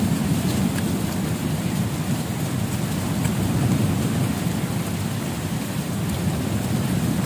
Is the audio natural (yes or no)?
yes